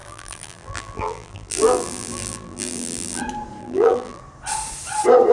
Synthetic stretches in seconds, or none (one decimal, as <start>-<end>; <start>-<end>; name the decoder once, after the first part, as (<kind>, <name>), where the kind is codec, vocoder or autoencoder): 0.0-3.2 (vocoder, BigVGAN v2); 3.6-4.2